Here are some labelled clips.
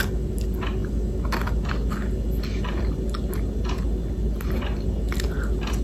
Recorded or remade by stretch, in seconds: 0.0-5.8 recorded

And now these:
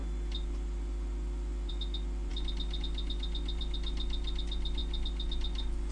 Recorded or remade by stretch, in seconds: 0.0-5.9 recorded

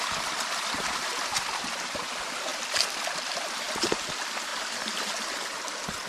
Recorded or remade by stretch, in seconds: 0.0-2.5 recorded; 2.5-4.1 remade; 4.1-4.5 recorded; 4.5-5.4 remade; 5.4-6.1 recorded

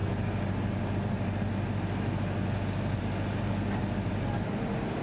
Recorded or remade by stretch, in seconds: 0.0-5.0 recorded

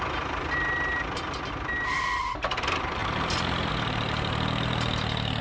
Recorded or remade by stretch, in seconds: 0.0-3.0 remade; 3.0-3.7 recorded; 3.7-5.4 remade

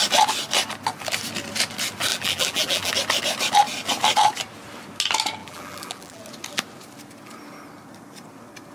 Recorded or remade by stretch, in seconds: 0.0-2.1 recorded; 2.1-2.9 remade; 2.9-5.4 recorded; 5.4-6.2 remade; 6.2-8.7 recorded

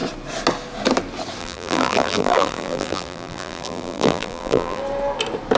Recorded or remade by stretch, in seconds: 0.0-1.4 recorded; 1.4-4.8 remade; 4.8-5.6 recorded

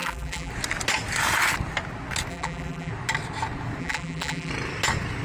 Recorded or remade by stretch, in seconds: 0.0-0.5 remade; 0.5-2.3 recorded; 2.3-2.9 remade; 2.9-3.8 recorded; 3.8-4.5 remade; 4.5-5.2 recorded